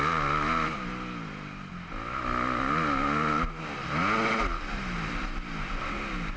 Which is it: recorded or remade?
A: recorded